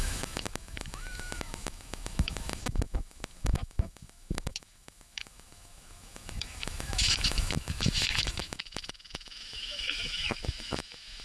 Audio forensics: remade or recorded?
remade